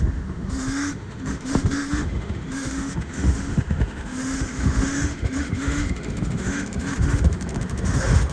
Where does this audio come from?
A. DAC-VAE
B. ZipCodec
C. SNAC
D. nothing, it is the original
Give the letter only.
A